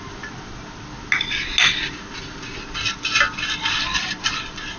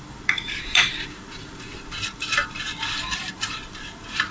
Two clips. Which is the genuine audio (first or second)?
first